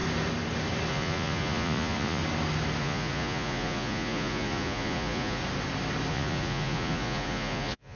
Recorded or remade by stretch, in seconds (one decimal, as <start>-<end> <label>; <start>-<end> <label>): 0.0-0.9 recorded; 0.9-2.2 remade; 2.2-2.8 recorded; 2.8-5.4 remade; 5.4-6.1 recorded; 6.1-8.0 remade